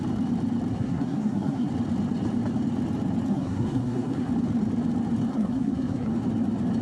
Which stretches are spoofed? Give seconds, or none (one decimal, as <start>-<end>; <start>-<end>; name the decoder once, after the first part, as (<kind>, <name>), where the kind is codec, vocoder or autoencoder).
0.7-1.7 (codec, SNAC); 3.3-4.3; 5.3-6.1